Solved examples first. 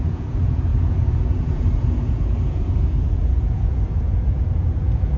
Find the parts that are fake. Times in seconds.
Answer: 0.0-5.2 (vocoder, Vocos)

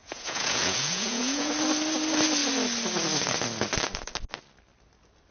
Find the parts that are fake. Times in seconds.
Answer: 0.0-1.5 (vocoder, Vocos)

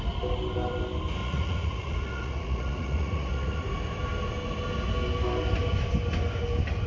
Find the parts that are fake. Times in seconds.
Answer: 1.2-3.6 (vocoder, Vocos)

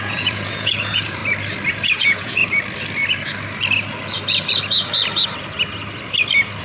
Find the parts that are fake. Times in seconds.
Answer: 0.0-1.2 (vocoder, Vocos); 1.7-2.4

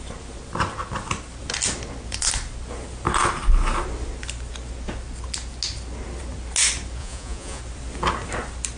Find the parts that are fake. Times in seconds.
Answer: 7.0-7.6 (vocoder, Vocos)

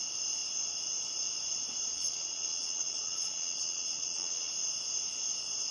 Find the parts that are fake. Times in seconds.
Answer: 1.9-4.5 (vocoder, Vocos)